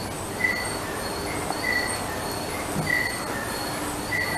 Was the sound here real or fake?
real